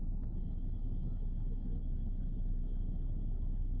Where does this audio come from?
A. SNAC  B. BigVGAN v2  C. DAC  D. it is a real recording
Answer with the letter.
D